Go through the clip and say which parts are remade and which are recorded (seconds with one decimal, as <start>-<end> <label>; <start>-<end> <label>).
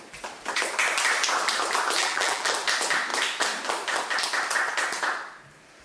0.0-2.0 recorded; 2.0-2.5 remade; 2.5-5.8 recorded